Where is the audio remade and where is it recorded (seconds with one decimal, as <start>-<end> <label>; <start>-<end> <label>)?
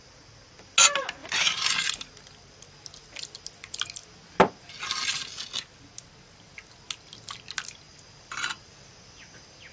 0.0-1.2 recorded; 1.2-1.7 remade; 1.7-7.9 recorded; 7.9-8.9 remade; 8.9-9.7 recorded